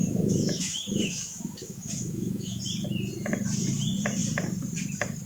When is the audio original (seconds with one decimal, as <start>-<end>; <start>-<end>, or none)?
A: 2.6-5.3